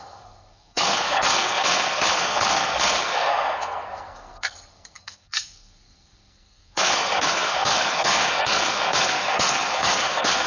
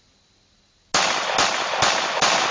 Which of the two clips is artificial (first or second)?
first